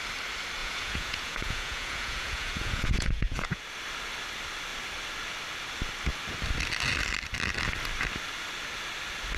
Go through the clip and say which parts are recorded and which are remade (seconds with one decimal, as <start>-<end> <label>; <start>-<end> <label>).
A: 0.0-0.6 recorded; 0.6-3.6 remade; 3.6-9.4 recorded